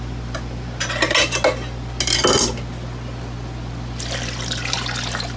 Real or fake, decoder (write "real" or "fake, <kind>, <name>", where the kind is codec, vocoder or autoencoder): real